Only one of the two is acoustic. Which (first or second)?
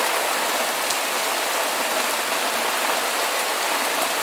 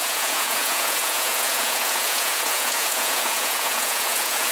first